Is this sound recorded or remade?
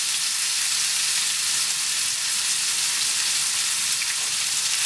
remade